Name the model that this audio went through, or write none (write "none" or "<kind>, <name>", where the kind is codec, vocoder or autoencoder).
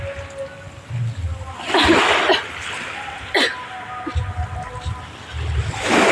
none